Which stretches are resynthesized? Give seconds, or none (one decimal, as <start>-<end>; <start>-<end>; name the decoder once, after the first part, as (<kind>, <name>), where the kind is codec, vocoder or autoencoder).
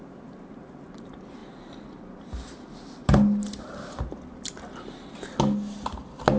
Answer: none